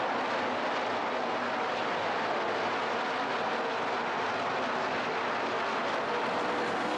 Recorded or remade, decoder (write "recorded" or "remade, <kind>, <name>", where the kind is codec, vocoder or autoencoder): recorded